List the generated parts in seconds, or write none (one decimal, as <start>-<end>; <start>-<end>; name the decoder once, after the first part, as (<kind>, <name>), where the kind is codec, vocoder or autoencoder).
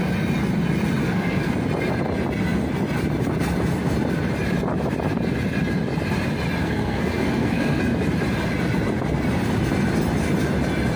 1.0-1.5 (codec, SNAC); 6.6-7.8